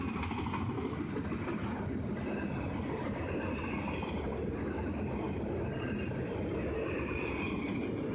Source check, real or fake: real